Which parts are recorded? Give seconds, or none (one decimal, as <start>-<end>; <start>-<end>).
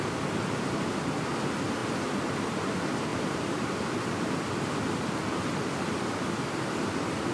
0.0-3.1; 3.7-7.3